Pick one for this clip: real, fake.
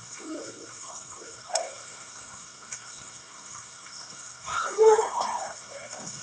fake